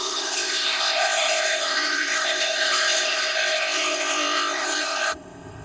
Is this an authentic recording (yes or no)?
no